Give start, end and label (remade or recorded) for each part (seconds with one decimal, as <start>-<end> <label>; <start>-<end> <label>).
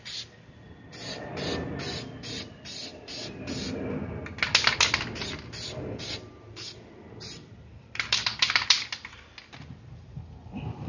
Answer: 0.0-2.9 remade; 2.9-4.9 recorded; 4.9-10.9 remade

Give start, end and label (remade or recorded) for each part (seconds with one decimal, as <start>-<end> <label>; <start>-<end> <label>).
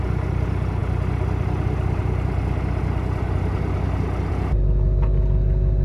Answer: 0.0-5.8 recorded